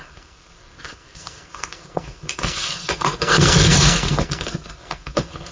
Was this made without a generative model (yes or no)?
no